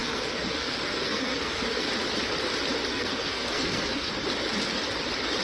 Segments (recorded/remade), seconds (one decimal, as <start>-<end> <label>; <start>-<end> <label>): 0.0-1.9 remade; 1.9-2.9 recorded; 2.9-4.1 remade; 4.1-5.4 recorded